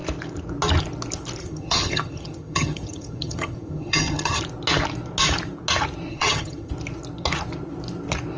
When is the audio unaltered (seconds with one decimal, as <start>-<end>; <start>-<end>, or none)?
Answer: 0.0-1.4; 4.4-6.1; 6.7-8.4